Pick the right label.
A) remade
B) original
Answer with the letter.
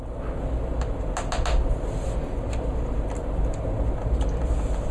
B